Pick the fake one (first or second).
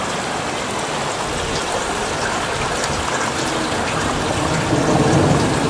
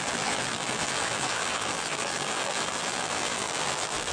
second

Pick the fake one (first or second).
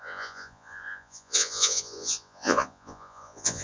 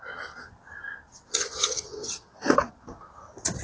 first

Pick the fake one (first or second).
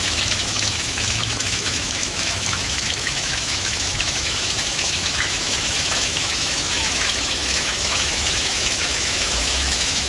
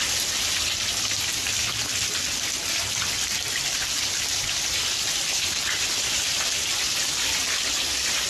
first